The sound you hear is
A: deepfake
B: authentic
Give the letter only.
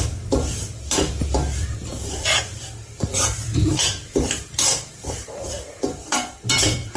A